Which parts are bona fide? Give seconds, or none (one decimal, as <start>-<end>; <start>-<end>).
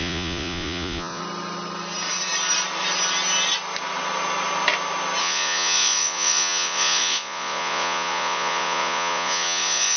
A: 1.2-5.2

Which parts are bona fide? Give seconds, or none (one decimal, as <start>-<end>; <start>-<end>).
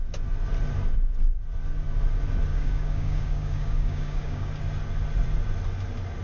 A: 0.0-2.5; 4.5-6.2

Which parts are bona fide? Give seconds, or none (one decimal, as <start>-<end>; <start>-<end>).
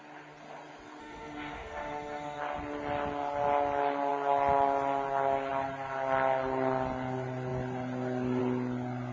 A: 0.0-1.0; 2.4-9.1